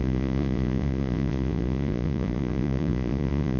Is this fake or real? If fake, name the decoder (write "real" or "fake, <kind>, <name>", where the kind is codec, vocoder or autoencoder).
fake, vocoder, Vocos